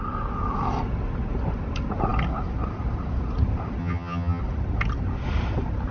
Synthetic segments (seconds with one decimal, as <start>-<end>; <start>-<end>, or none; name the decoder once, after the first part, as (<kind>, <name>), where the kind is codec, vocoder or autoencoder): 3.8-4.4 (vocoder, HiFi-GAN)